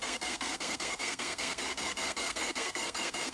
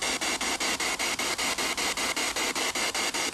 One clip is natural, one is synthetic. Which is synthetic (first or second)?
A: first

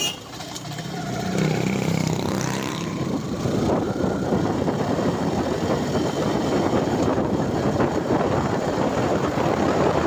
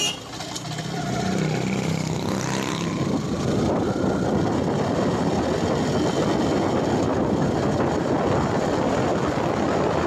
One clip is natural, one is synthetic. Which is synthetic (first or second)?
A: first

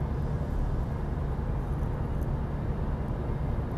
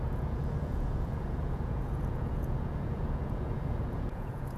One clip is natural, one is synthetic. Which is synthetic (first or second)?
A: second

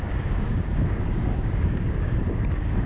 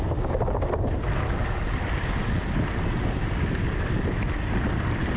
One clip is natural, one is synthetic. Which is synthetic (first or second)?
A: first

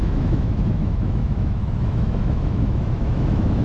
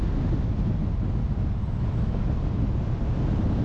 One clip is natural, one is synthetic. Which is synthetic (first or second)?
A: first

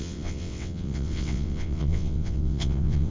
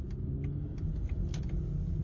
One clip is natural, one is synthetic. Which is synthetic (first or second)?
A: first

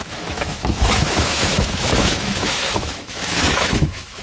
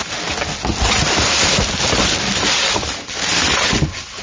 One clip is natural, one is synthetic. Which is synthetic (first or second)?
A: first